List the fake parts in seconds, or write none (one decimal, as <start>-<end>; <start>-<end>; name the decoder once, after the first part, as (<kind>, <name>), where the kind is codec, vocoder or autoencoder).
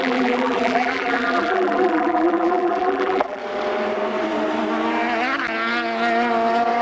0.0-3.4 (vocoder, BigVGAN v2)